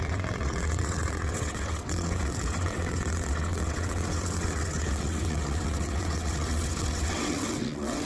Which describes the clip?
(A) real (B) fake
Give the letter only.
B